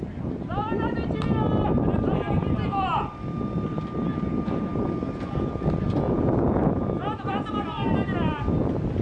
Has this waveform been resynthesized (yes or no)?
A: no